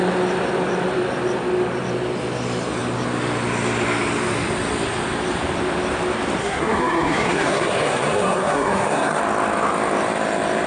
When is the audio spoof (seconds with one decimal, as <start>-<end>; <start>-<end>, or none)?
6.4-9.2